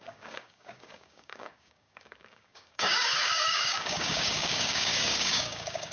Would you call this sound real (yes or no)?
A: no